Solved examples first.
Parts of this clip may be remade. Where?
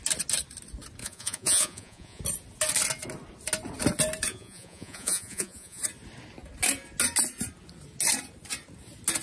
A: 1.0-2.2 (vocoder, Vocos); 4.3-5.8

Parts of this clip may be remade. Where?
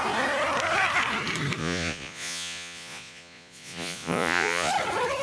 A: 1.6-4.7 (vocoder, Vocos)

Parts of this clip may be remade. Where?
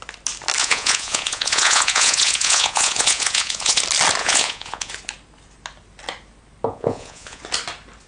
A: 0.6-3.8 (vocoder, Vocos); 4.2-4.9; 6.7-7.4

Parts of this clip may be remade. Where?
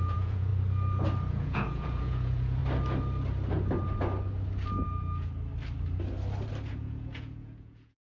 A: 0.0-0.5 (vocoder, Vocos); 1.3-2.6; 6.7-8.0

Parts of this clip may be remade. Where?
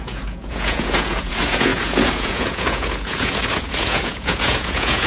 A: 0.0-5.1 (vocoder, Vocos)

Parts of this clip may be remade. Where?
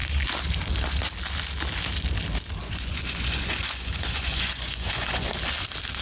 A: 2.6-5.3 (vocoder, Vocos)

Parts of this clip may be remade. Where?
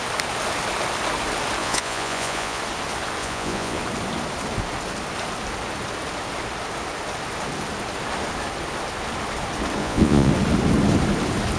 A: 1.6-2.6 (vocoder, Vocos); 3.2-3.8; 9.8-10.3